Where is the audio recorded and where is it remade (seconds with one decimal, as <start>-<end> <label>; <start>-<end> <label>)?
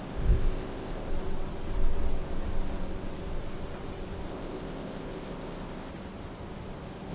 0.0-1.1 remade; 1.1-4.3 recorded; 4.3-5.9 remade; 5.9-7.1 recorded